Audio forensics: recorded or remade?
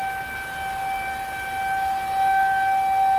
recorded